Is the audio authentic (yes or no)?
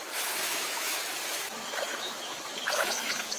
no